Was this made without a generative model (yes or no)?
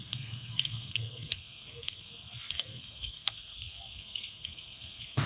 no